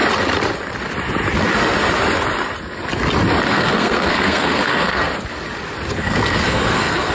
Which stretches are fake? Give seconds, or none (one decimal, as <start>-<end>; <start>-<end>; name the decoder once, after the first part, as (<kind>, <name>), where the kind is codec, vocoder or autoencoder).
3.5-5.1 (codec, SNAC); 5.9-7.1